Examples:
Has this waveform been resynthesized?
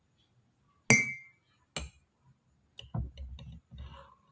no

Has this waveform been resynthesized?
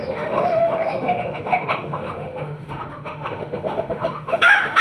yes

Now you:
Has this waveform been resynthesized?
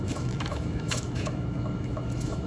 yes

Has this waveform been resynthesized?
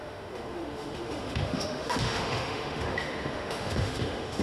yes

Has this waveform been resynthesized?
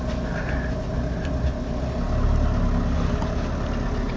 no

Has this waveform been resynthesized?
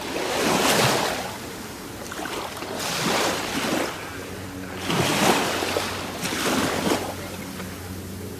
no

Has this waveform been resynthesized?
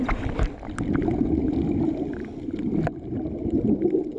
no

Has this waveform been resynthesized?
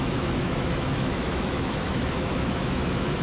yes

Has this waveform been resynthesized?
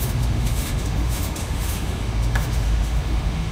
yes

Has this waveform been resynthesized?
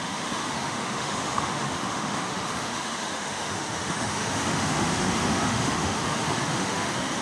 yes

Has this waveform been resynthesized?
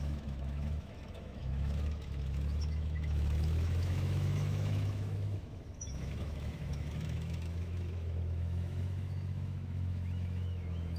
yes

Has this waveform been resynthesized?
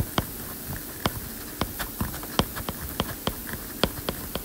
no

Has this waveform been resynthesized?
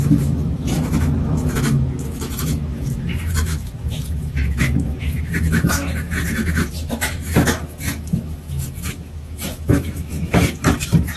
yes